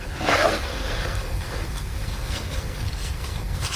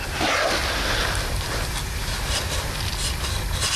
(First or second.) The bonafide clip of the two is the second